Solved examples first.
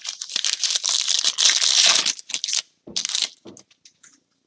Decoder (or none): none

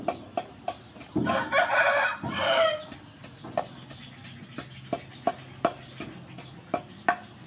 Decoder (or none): none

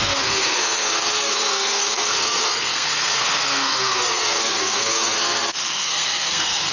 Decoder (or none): codec, SNAC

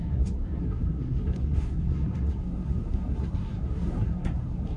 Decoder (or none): codec, SNAC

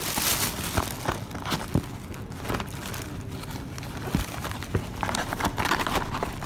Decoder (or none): none